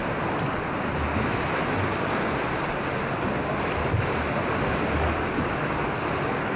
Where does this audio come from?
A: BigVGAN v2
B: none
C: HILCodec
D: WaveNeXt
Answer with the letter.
B